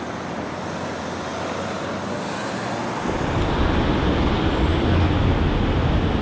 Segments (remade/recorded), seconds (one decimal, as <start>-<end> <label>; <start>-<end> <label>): 0.0-1.3 recorded; 1.3-2.4 remade; 2.4-6.2 recorded